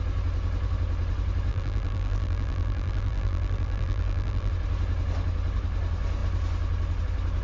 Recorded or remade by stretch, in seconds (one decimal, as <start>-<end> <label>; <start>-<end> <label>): 0.0-1.5 recorded; 1.5-4.5 remade; 4.5-7.4 recorded